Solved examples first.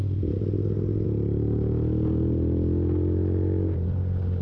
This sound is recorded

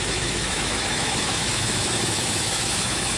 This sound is remade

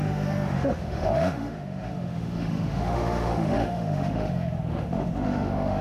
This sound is remade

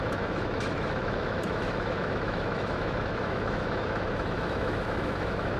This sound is remade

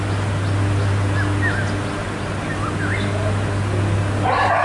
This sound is recorded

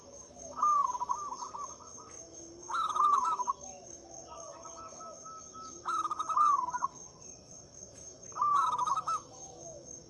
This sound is remade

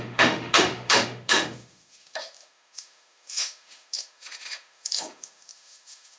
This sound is remade